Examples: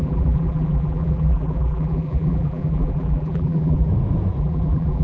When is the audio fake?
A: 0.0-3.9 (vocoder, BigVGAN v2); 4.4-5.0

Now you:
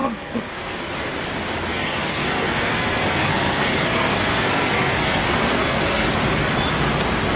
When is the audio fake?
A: 0.0-0.9 (codec, SNAC); 1.7-6.1